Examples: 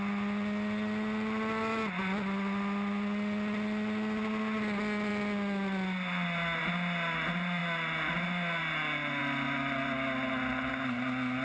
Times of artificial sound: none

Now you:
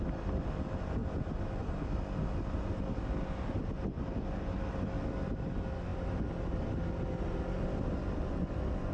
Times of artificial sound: none

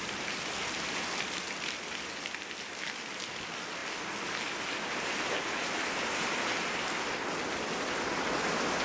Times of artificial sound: none

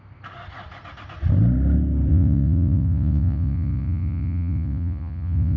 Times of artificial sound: 2.1-5.6

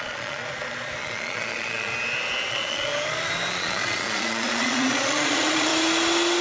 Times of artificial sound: 0.0-0.4; 1.0-1.9; 2.5-2.9; 3.5-5.7

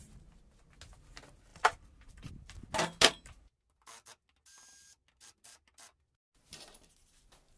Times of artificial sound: 1.5-2.3

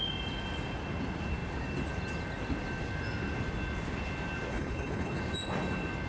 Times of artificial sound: 4.5-5.2

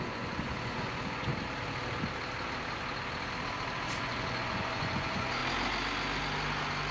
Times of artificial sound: 0.0-1.3; 4.0-5.4